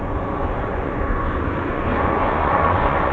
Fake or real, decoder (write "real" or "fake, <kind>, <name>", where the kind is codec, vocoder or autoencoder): fake, vocoder, Vocos